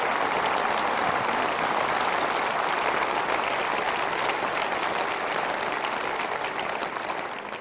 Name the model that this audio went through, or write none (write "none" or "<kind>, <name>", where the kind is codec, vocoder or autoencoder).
none